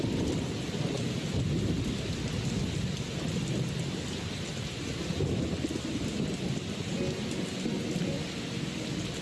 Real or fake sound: real